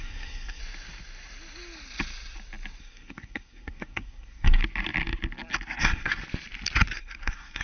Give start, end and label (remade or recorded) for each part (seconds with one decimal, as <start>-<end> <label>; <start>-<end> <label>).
0.0-0.6 remade; 0.6-2.8 recorded; 2.8-4.6 remade; 4.6-5.8 recorded; 5.8-6.2 remade; 6.2-7.0 recorded; 7.0-7.6 remade